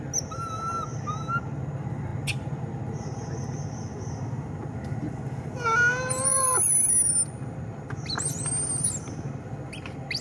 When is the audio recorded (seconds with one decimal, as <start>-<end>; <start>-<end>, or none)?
0.0-10.2